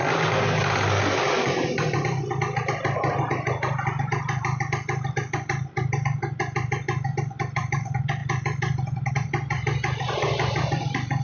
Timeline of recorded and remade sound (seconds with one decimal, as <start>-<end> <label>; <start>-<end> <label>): 0.0-11.2 recorded